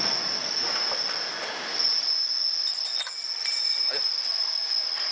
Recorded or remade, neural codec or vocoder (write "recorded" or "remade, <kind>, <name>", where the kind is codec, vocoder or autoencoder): recorded